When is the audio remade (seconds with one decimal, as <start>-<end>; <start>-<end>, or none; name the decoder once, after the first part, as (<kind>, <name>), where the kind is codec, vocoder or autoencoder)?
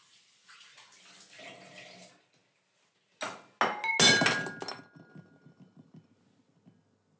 none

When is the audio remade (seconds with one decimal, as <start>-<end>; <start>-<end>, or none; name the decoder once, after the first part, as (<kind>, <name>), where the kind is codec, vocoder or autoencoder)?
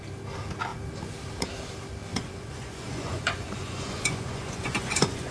2.1-5.3 (vocoder, Vocos)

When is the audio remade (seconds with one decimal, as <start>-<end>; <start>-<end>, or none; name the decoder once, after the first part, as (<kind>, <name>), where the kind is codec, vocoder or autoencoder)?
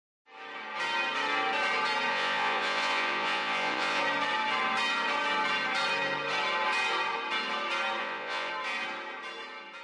2.1-4.0 (vocoder, Vocos); 8.0-8.5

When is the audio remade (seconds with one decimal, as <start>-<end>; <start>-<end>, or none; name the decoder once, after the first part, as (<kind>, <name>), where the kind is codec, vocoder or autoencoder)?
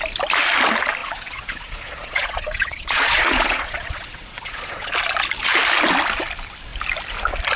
1.0-4.9 (vocoder, Vocos)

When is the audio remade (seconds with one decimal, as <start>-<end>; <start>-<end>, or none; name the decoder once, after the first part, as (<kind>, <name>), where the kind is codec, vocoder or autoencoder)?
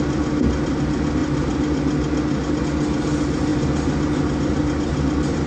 none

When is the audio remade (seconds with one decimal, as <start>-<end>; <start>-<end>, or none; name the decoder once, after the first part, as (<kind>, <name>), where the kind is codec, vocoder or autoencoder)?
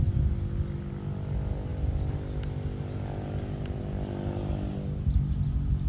none